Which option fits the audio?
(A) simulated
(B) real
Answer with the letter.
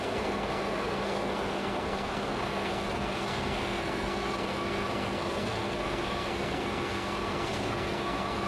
A